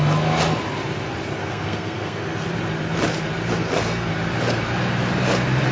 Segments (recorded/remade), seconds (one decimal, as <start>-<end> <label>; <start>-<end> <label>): 0.0-1.4 recorded; 1.4-2.5 remade; 2.5-3.5 recorded; 3.5-4.1 remade; 4.1-5.7 recorded